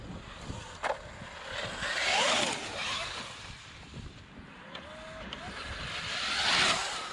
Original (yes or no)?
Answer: yes